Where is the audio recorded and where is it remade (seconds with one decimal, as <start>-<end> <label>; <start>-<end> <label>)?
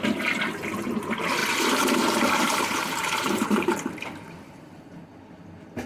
0.0-1.4 recorded; 1.4-4.9 remade; 4.9-5.9 recorded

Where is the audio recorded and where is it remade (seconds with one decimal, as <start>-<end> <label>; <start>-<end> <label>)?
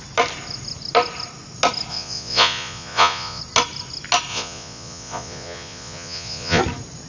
0.0-1.9 recorded; 1.9-3.4 remade; 3.4-4.3 recorded; 4.3-6.6 remade; 6.6-7.1 recorded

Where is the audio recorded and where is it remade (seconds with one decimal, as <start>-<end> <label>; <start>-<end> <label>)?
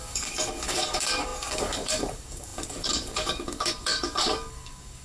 0.0-5.0 remade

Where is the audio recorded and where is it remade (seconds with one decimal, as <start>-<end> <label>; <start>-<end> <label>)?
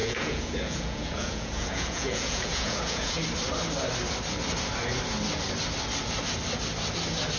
0.0-3.2 remade; 3.2-7.4 recorded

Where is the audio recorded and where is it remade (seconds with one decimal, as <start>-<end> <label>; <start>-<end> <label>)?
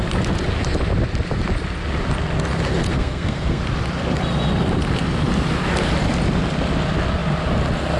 0.0-2.9 recorded; 2.9-3.6 remade; 3.6-8.0 recorded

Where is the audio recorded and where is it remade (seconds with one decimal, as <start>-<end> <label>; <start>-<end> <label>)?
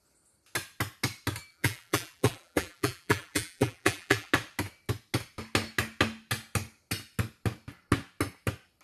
0.0-1.5 recorded; 1.5-4.3 remade; 4.3-8.8 recorded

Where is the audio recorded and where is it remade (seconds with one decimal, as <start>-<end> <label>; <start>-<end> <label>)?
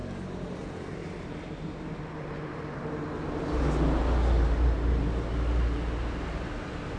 0.0-2.0 remade; 2.0-7.0 recorded